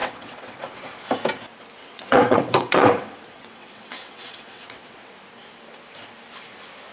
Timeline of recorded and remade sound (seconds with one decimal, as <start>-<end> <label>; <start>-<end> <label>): 0.0-0.6 remade; 0.6-1.8 recorded; 1.8-5.1 remade; 5.1-6.9 recorded